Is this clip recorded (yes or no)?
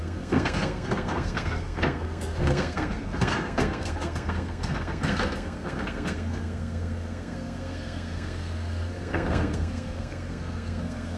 no